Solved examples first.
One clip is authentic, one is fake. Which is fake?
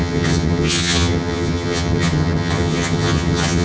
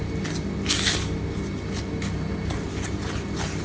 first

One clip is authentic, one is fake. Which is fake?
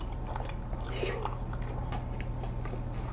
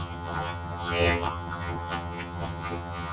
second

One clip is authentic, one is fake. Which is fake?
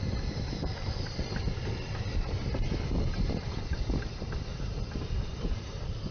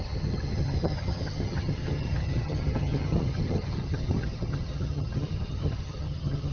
second